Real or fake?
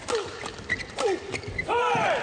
real